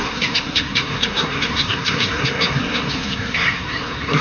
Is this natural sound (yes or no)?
no